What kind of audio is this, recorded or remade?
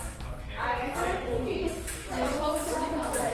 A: remade